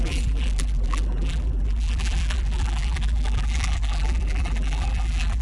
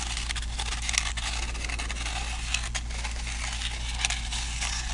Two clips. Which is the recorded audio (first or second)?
second